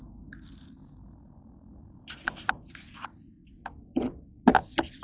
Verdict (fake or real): real